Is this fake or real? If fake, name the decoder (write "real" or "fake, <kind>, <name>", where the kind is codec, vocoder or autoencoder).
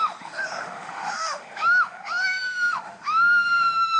fake, autoencoder, DAC-VAE